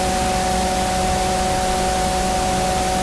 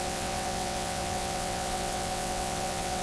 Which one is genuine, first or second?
first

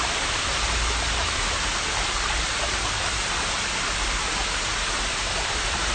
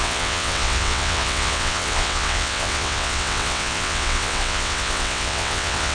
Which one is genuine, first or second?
first